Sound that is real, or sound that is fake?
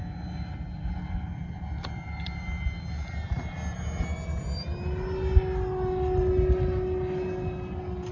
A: real